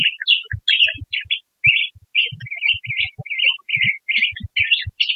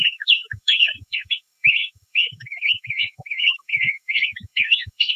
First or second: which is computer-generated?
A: second